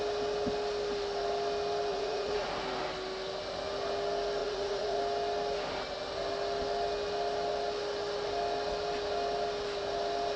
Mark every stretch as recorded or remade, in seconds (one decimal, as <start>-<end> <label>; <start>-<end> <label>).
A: 0.0-1.9 recorded; 1.9-2.5 remade; 2.5-4.4 recorded; 4.4-5.0 remade; 5.0-10.4 recorded